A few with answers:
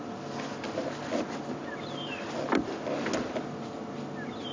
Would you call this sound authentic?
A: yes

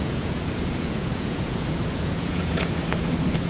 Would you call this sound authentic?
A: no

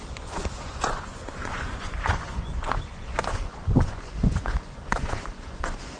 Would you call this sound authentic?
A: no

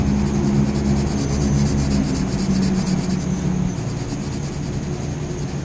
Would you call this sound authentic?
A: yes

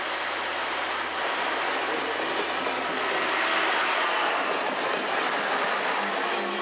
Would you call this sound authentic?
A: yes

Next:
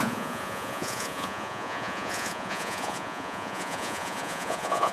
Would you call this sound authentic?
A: no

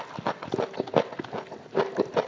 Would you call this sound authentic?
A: yes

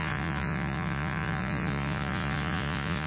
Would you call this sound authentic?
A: no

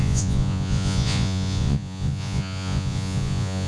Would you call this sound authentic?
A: no